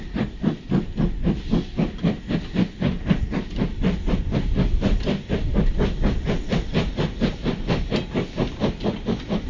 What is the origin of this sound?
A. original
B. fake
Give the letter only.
A